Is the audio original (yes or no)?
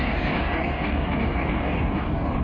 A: no